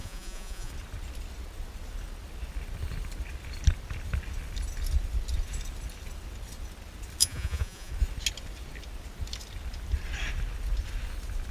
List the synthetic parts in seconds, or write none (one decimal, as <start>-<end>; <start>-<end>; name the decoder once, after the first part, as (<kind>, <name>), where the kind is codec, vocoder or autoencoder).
0.0-0.7 (vocoder, Vocos); 7.2-7.9